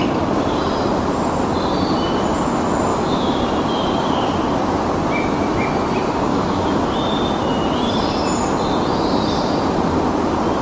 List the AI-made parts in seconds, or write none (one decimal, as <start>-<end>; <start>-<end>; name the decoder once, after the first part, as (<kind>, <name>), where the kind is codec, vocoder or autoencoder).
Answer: 2.9-3.4 (autoencoder, DAC-VAE); 6.3-6.8